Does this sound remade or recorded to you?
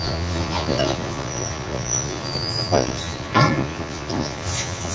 remade